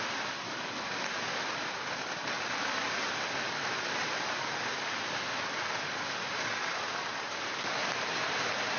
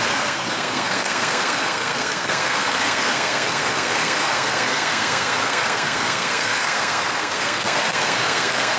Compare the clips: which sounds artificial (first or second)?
second